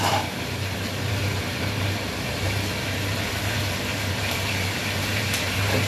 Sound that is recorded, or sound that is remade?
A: remade